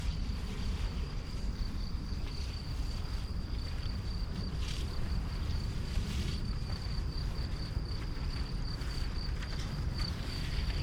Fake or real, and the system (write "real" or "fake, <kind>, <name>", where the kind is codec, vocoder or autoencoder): fake, vocoder, BigVGAN v2